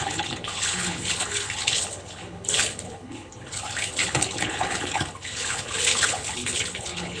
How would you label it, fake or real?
fake